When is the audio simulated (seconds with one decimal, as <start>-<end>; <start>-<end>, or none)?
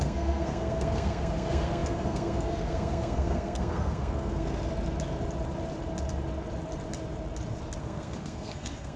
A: 0.0-4.6; 7.8-9.0